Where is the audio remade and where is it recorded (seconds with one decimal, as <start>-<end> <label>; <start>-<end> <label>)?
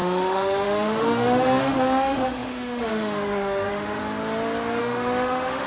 0.0-4.0 remade; 4.0-4.8 recorded; 4.8-5.7 remade